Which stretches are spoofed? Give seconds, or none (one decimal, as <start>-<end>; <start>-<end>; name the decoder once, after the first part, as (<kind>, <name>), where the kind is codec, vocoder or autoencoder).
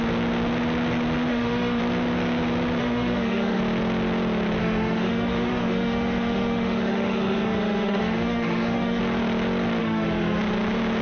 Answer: 1.3-1.8 (autoencoder, DAC-VAE); 2.8-3.6; 4.6-9.0; 9.8-10.4